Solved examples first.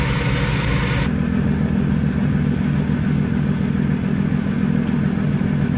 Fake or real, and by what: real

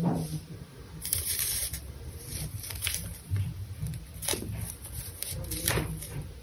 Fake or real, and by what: fake, vocoder, BigVGAN v2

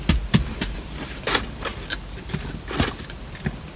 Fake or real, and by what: real